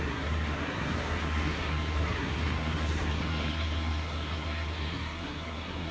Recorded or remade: remade